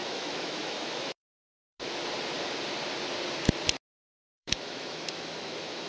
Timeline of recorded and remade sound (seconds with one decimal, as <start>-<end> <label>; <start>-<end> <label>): 0.0-1.8 remade; 1.8-4.0 recorded; 4.0-5.9 remade